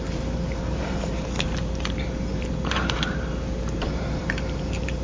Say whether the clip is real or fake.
fake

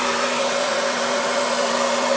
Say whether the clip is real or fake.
fake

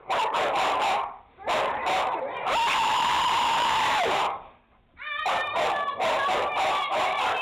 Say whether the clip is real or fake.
fake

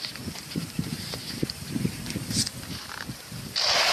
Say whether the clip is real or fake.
fake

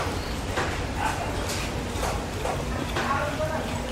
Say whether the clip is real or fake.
real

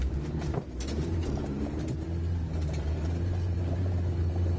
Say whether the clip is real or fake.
fake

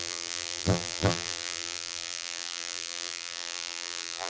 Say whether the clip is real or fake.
fake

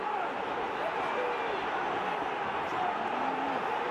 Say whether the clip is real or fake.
real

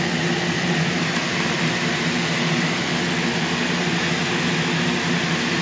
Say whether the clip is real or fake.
real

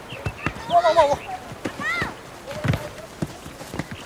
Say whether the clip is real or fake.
real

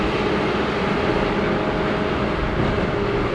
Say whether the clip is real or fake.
real